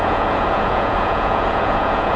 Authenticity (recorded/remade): remade